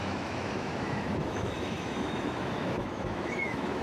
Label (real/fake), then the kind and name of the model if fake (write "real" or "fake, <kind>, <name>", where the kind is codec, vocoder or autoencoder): fake, autoencoder, DAC-VAE